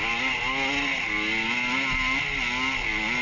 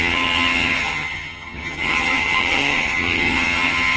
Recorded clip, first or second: first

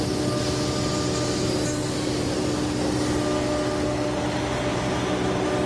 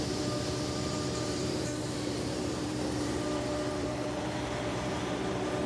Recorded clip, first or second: first